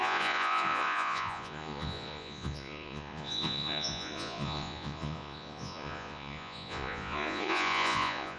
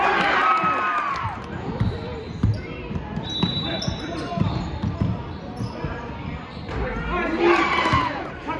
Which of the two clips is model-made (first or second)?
first